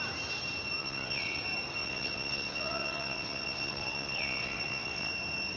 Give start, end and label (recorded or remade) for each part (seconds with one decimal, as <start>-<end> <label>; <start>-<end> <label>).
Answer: 0.0-0.8 recorded; 0.8-1.4 remade; 1.4-1.8 recorded; 1.8-5.1 remade; 5.1-5.6 recorded